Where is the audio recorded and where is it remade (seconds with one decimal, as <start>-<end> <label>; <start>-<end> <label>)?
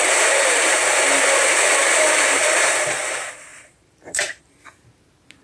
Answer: 0.0-0.8 remade; 0.8-2.4 recorded; 2.4-5.4 remade